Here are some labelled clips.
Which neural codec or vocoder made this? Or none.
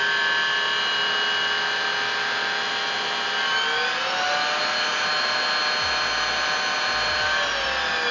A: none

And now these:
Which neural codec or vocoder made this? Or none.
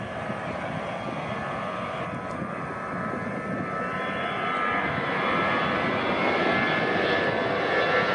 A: none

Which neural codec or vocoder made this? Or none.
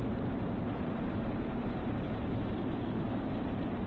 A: vocoder, BigVGAN v2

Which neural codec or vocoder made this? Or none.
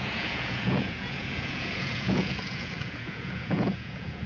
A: vocoder, Vocos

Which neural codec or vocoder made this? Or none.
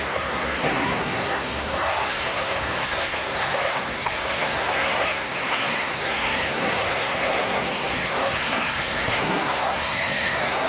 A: codec, SNAC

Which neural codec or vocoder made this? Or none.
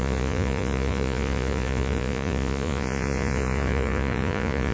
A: vocoder, Vocos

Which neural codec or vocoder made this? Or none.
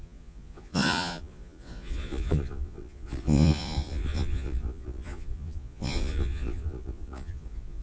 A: vocoder, Vocos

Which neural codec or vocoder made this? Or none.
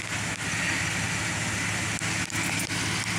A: none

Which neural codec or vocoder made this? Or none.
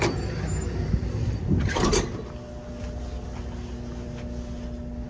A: none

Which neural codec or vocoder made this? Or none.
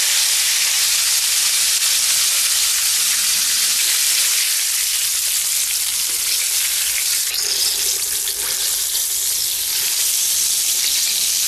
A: none